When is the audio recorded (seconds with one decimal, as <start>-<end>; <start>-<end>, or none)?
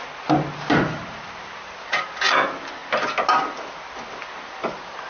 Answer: 0.0-5.1